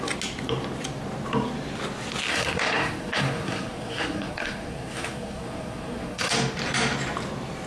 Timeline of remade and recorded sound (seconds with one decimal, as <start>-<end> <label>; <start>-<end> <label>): 0.0-2.3 recorded; 2.3-6.3 remade; 6.3-7.7 recorded

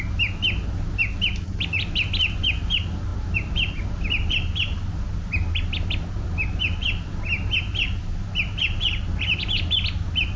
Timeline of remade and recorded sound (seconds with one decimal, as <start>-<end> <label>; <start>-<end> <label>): 0.0-10.4 recorded

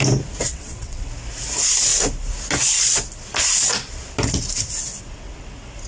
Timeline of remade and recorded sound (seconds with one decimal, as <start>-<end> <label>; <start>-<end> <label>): 0.0-0.5 recorded; 0.5-1.1 remade; 1.1-5.9 recorded

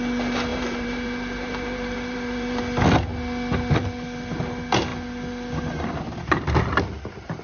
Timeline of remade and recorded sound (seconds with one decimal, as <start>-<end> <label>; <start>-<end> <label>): 0.0-0.5 recorded; 0.5-2.6 remade; 2.6-7.4 recorded

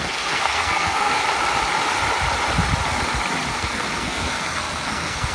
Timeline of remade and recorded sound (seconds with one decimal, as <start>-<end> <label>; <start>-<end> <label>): 0.0-1.2 remade; 1.2-3.5 recorded; 3.5-5.3 remade

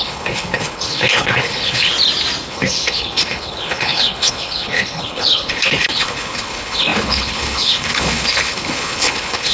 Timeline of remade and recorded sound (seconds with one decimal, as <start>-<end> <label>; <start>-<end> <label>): 0.0-1.9 remade; 1.9-2.5 recorded; 2.5-9.5 remade

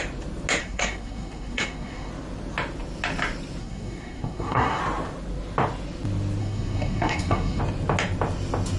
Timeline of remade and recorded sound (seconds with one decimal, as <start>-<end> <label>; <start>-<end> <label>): 0.0-0.6 recorded; 0.6-2.1 remade; 2.1-3.6 recorded; 3.6-4.8 remade; 4.8-6.4 recorded; 6.4-7.6 remade; 7.6-8.8 recorded